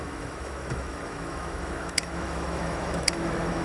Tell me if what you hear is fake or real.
fake